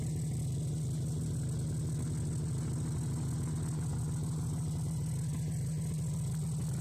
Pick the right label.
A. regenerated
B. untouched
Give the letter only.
B